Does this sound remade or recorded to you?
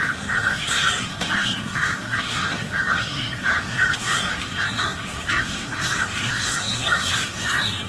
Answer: remade